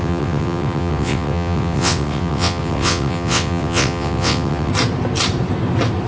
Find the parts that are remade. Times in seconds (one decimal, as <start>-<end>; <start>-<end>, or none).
0.0-4.7